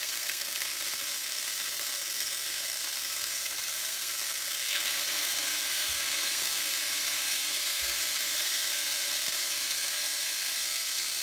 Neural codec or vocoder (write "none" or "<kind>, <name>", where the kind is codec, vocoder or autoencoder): codec, SNAC